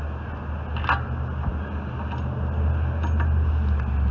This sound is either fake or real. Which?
real